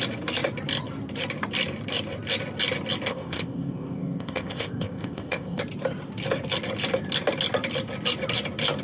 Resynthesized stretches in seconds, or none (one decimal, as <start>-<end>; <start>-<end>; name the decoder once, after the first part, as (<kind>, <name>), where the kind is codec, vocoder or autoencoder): 3.1-5.6 (codec, ZipCodec)